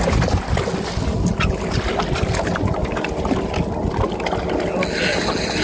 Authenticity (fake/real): real